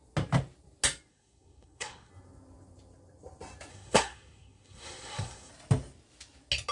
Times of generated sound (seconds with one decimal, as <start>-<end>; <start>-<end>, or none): 1.1-2.1; 3.7-5.5